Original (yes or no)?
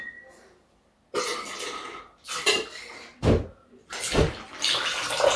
yes